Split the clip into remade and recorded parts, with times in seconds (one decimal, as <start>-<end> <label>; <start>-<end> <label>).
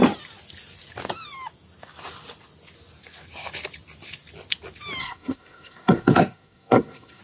0.0-5.0 recorded; 5.0-7.2 remade